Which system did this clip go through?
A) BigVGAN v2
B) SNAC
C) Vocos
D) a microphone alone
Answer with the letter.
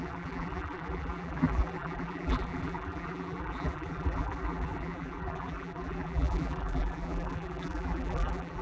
A